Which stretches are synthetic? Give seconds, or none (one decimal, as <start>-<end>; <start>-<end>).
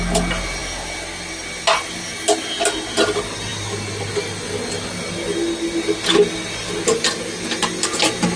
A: none